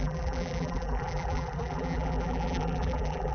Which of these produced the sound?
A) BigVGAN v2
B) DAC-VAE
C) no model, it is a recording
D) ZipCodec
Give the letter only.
A